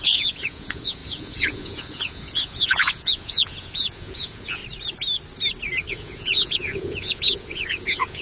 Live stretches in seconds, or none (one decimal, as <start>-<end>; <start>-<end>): 4.6-5.9